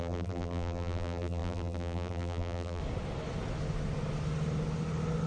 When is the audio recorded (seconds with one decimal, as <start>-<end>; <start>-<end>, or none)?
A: 2.8-5.3